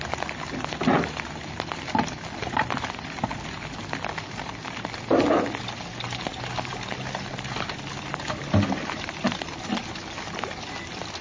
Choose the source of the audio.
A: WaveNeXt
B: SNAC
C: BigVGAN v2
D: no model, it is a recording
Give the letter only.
D